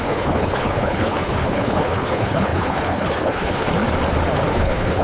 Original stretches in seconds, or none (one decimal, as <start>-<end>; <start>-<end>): 3.7-4.5